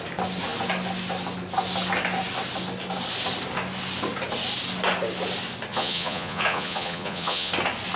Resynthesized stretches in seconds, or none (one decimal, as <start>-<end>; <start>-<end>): 5.7-7.5